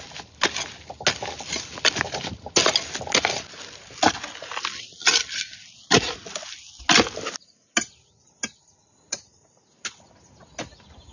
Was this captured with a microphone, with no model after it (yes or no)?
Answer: yes